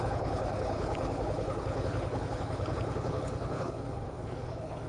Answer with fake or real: fake